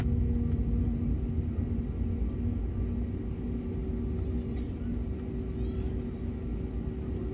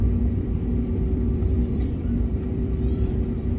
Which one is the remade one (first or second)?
second